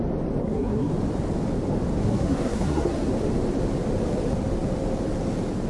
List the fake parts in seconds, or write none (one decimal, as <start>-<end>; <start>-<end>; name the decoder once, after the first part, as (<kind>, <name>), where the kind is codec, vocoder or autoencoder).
0.4-0.9 (codec, SNAC); 2.0-3.1